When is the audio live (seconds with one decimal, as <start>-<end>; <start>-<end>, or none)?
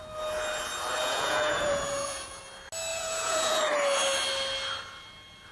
0.0-1.0; 2.4-2.9; 3.6-5.5